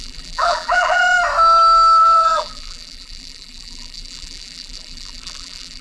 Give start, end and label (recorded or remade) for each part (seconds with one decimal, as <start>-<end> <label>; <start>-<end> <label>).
0.0-1.0 remade; 1.0-2.0 recorded; 2.0-5.8 remade